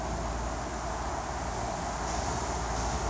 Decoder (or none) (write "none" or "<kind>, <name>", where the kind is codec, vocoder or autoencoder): none